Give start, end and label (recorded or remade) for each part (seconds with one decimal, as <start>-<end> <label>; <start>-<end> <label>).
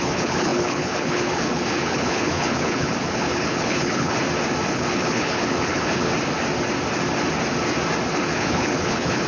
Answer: 0.0-4.2 remade; 4.2-4.7 recorded; 4.7-6.1 remade; 6.1-8.1 recorded; 8.1-9.3 remade